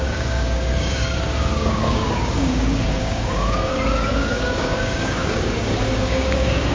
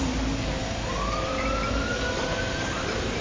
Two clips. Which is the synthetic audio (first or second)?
first